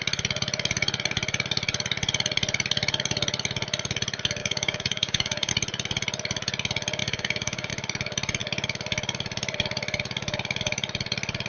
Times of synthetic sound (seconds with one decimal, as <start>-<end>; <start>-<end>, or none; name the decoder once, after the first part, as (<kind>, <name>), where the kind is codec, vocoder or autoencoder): 4.4-5.5 (codec, DAC); 7.0-7.7